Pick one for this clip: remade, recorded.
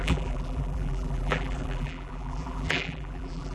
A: remade